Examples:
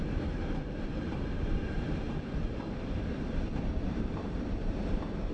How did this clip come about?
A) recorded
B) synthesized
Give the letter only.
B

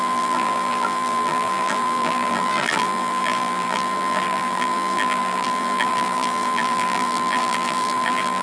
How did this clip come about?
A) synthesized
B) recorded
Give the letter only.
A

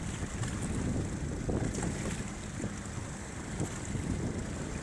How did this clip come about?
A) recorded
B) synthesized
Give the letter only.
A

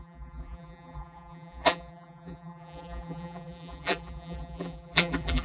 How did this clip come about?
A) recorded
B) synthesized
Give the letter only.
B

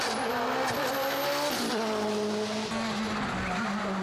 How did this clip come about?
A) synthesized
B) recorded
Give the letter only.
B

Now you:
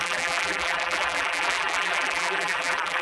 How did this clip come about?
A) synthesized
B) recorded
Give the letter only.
A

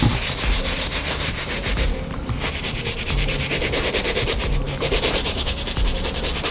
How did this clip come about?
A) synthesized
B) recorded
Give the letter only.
A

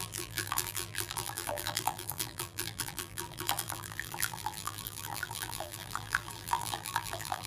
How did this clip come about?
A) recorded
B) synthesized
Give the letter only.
B